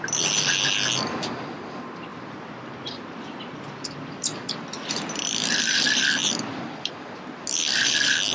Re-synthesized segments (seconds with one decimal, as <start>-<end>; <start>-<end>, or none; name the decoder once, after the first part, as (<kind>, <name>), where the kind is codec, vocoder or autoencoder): 2.1-4.4 (vocoder, BigVGAN v2); 6.2-6.9